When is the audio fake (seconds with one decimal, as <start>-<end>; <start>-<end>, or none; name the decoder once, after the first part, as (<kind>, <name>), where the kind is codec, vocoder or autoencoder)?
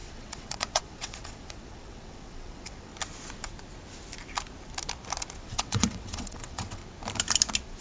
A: 0.0-2.9 (vocoder, WaveNeXt); 5.4-6.8